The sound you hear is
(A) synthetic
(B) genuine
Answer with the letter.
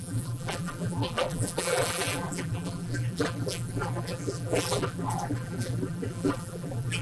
A